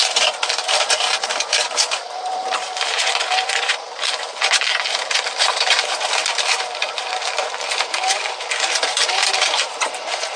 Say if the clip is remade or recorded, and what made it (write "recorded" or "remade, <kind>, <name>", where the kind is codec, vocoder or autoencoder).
remade, vocoder, BigVGAN v2